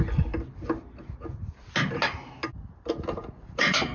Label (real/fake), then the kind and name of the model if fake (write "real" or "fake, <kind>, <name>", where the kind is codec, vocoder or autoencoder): real